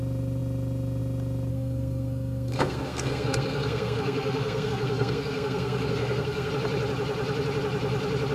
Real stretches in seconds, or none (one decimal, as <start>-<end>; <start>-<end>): 0.0-1.5; 6.5-8.3